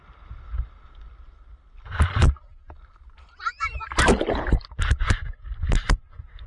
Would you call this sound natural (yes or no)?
yes